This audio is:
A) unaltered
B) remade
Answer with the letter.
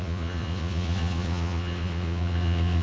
B